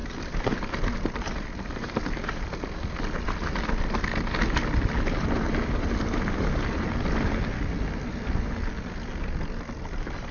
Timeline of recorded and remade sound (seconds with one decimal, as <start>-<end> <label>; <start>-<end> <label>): 0.0-10.3 recorded